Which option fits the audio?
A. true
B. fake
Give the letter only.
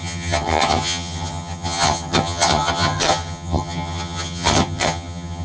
B